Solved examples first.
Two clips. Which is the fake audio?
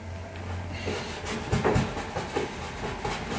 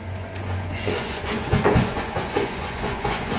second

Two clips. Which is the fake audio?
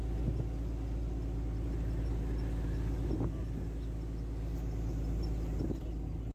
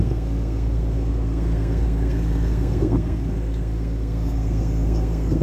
second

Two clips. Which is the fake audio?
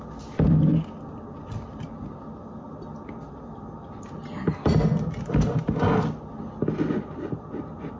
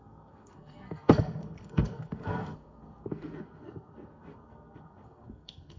second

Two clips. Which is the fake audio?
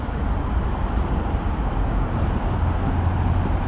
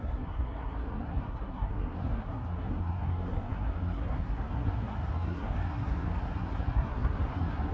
second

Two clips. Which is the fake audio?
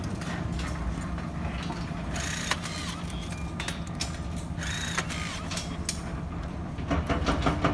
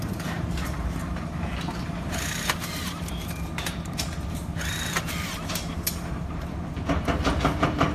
second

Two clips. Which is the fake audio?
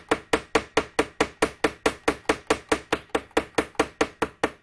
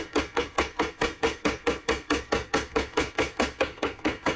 second